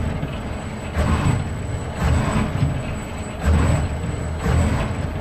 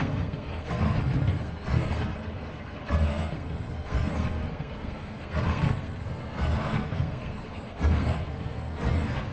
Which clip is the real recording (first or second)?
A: first